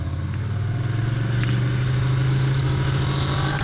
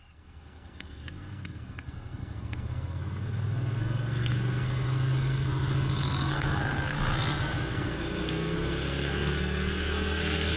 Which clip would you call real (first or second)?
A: first